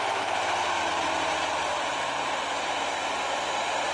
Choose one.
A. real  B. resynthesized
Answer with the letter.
A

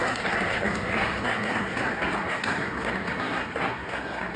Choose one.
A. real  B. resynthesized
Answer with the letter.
B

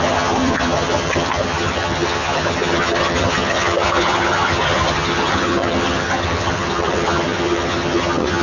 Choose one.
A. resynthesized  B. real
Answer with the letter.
A